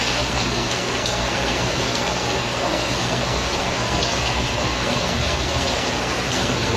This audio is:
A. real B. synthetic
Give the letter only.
B